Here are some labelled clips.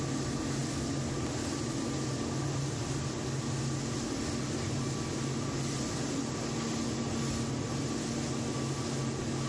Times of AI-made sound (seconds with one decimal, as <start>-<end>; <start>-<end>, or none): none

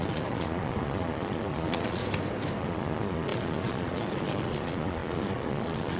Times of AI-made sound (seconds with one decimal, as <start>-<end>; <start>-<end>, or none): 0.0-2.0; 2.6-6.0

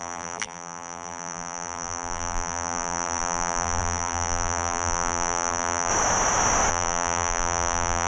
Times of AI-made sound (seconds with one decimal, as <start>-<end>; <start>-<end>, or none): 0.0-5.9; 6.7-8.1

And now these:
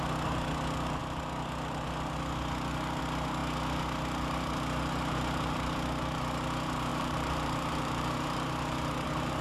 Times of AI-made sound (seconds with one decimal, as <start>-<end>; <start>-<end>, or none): 6.9-9.4

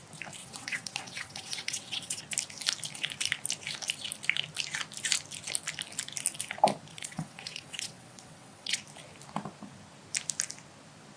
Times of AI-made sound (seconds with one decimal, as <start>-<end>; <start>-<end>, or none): 0.4-2.2; 6.9-8.8

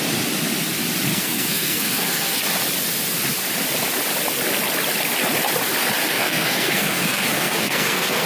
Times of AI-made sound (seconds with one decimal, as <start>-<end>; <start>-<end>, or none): 1.1-2.4; 6.1-8.3

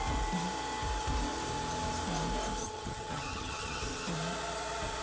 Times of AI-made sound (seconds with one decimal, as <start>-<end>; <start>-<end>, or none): 2.6-3.8

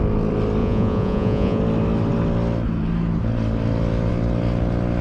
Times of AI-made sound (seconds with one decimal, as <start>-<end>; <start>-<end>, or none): 0.6-1.6